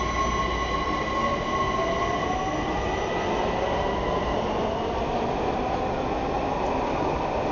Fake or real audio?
real